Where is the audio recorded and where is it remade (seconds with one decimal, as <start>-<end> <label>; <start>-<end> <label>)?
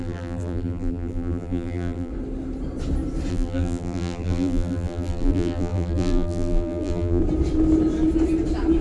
0.0-2.1 remade; 2.1-3.3 recorded; 3.3-7.2 remade; 7.2-8.8 recorded